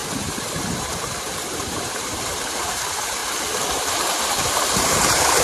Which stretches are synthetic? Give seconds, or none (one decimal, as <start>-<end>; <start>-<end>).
0.0-3.2; 3.8-5.4

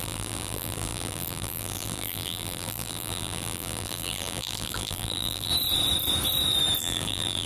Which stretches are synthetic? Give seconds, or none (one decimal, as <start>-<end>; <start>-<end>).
0.0-5.5; 6.8-7.5

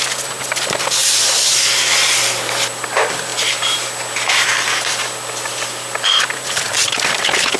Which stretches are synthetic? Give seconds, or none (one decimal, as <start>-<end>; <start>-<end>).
0.0-3.3; 4.5-7.6

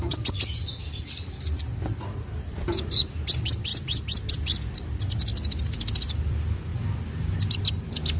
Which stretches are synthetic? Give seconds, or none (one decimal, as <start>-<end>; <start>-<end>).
0.0-3.7; 4.3-5.3; 6.0-6.7; 7.7-8.2

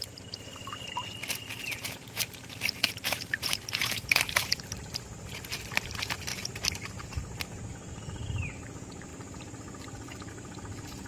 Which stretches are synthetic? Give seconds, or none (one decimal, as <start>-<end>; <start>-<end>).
0.0-0.5; 1.7-9.1; 10.3-11.1

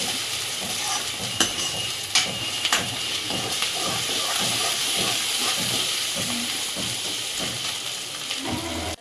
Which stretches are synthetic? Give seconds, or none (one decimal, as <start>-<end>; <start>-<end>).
1.5-4.6; 5.4-6.7